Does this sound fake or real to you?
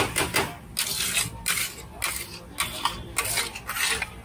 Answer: real